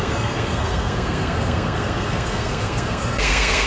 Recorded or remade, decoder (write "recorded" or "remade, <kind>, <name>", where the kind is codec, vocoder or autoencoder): remade, codec, SNAC